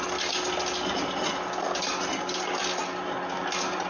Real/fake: real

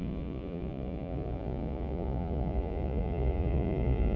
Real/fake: fake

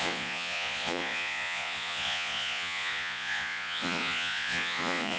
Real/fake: fake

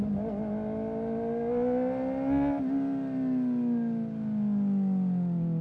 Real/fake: real